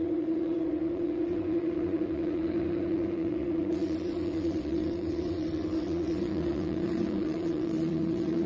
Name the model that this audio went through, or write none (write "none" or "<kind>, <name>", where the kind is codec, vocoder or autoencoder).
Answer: vocoder, WaveNeXt